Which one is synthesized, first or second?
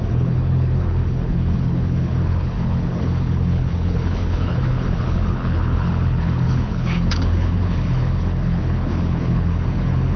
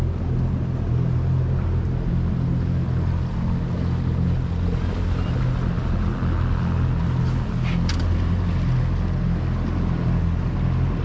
first